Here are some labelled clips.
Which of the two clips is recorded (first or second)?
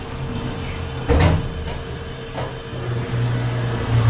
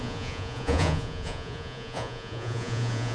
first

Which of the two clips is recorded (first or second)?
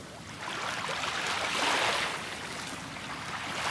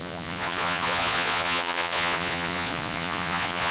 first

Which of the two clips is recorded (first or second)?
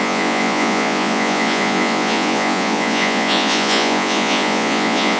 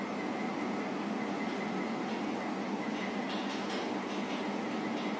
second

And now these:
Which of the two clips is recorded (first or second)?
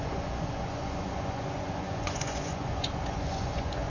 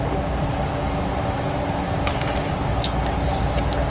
second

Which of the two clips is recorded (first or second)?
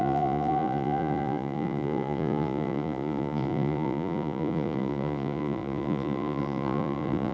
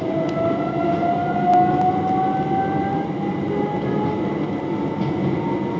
second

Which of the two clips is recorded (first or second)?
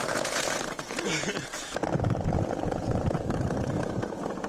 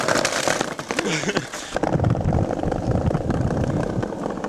second